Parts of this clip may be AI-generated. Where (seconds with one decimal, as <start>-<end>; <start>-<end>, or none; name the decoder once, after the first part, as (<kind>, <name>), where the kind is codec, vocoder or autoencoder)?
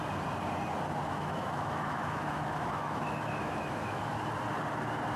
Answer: 1.0-4.1 (autoencoder, DAC-VAE)